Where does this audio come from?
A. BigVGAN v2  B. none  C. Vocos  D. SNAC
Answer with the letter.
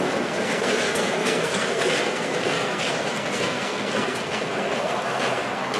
D